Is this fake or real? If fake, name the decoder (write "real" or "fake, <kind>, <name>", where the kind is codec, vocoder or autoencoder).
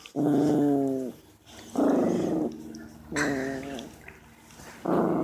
real